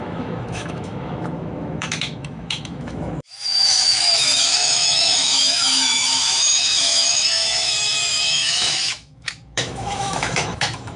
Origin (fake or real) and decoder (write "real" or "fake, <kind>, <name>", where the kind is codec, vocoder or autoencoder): fake, autoencoder, DAC-VAE